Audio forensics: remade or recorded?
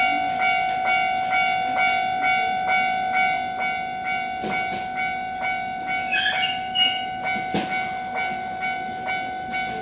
recorded